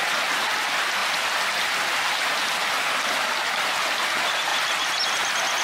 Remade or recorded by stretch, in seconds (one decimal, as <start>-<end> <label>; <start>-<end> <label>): 0.0-5.6 recorded